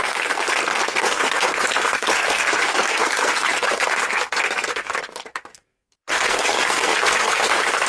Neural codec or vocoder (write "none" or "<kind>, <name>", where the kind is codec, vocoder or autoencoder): codec, SNAC